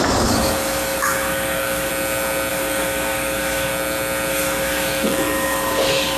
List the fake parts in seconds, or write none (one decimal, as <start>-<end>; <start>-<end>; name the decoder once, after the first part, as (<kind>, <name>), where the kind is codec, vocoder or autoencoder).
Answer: 0.0-1.9 (codec, DAC); 2.5-3.7; 4.3-6.2